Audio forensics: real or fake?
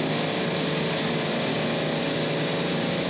real